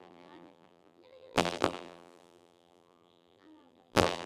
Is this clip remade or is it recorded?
remade